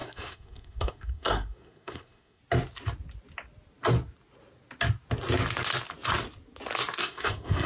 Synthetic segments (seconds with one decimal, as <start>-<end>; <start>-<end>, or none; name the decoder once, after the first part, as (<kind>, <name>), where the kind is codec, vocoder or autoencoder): 0.0-2.4 (codec, SNAC); 7.0-7.7